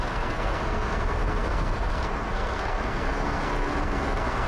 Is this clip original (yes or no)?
no